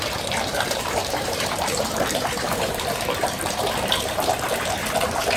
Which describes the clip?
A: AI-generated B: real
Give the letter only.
A